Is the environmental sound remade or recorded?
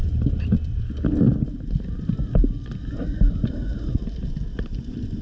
recorded